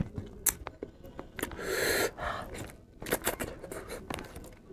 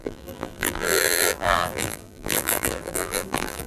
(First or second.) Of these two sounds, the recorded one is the first